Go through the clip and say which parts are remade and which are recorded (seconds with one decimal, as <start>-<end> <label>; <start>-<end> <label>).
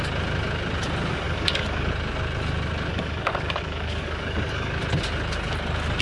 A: 0.0-1.1 recorded; 1.1-1.9 remade; 1.9-2.9 recorded; 2.9-4.8 remade; 4.8-6.0 recorded